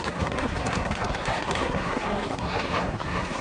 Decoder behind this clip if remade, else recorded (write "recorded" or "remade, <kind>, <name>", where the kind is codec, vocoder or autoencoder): remade, codec, SNAC